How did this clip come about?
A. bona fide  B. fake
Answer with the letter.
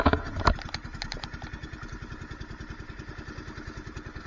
A